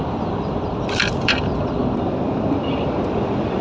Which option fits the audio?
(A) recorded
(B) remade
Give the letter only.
B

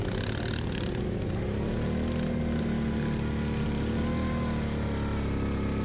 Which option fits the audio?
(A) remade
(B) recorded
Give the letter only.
B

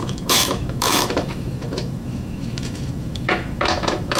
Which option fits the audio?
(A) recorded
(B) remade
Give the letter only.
B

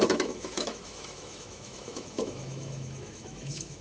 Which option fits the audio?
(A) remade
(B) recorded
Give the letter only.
A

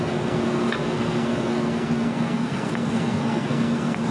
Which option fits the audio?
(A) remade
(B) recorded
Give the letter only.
A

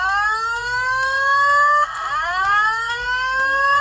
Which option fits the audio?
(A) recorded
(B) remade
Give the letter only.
B